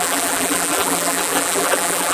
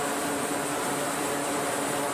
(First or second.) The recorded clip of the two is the second